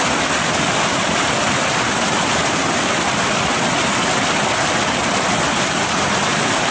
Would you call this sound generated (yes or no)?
no